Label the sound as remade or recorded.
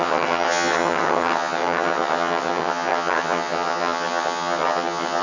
remade